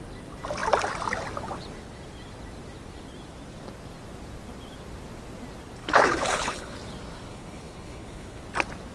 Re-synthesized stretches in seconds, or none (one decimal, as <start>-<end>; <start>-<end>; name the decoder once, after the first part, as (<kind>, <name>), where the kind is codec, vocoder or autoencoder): 5.8-6.8 (codec, HILCodec); 7.3-8.4